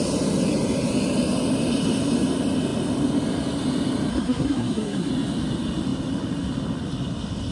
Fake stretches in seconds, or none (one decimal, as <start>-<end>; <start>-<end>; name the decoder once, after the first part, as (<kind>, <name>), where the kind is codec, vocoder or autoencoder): 4.1-5.1 (codec, SNAC)